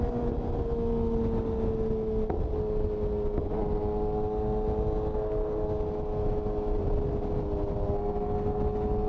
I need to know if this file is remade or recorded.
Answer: recorded